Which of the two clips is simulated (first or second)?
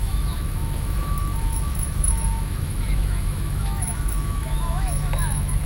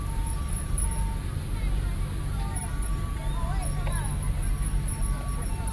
first